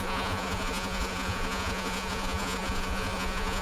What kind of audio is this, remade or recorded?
remade